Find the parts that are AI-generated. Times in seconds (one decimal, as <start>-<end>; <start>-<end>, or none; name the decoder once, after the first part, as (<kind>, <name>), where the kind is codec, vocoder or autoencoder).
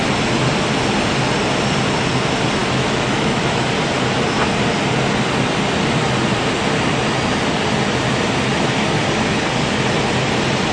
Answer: 2.6-3.6 (autoencoder, DAC-VAE)